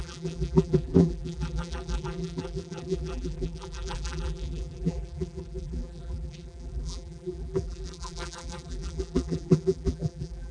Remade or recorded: remade